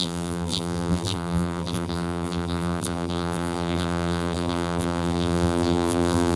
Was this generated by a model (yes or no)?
yes